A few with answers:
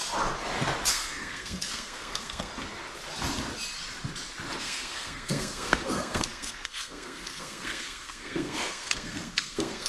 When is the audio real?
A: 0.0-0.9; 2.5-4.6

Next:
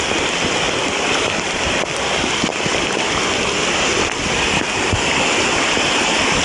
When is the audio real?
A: 0.0-6.4

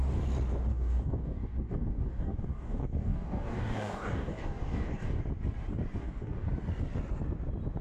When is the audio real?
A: 0.0-0.7; 5.2-6.0; 6.5-7.8

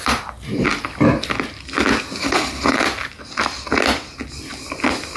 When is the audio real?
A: 0.0-2.2; 2.8-5.2

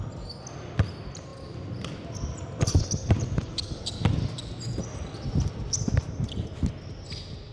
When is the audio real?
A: 0.0-7.5

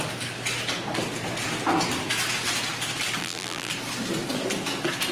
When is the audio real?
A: 0.0-3.2; 3.7-5.1

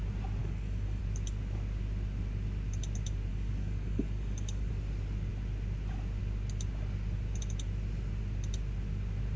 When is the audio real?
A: 0.0-0.4; 1.0-3.3; 4.7-9.4

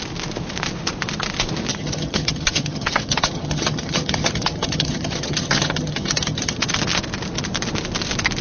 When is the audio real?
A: 0.0-1.7; 6.6-8.4